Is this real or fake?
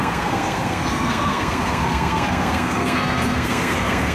fake